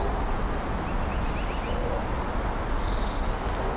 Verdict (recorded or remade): recorded